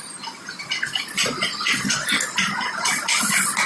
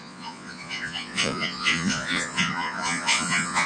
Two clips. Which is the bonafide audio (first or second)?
first